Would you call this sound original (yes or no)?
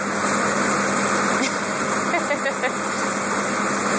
yes